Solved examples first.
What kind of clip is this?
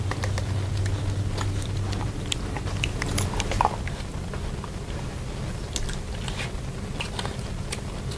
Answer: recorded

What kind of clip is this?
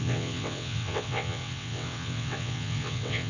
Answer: remade